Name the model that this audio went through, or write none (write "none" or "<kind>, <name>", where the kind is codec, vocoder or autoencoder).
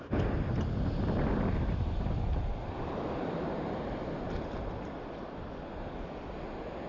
none